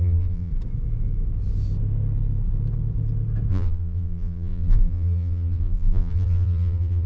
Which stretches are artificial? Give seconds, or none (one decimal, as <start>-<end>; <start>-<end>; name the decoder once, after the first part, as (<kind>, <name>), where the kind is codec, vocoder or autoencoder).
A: 0.0-0.5 (vocoder, BigVGAN v2); 3.5-7.1